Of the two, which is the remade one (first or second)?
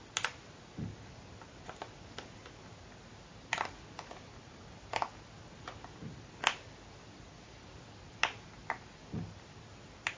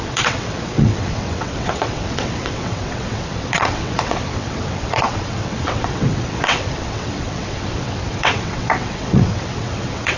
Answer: second